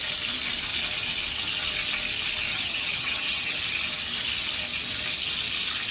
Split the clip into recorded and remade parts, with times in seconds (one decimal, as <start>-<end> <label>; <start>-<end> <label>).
0.0-2.5 recorded; 2.5-3.6 remade; 3.6-5.9 recorded